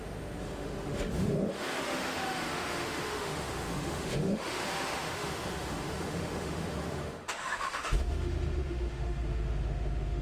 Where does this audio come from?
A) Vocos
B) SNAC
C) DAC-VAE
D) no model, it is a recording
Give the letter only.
C